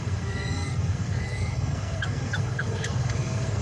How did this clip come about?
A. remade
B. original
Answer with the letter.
A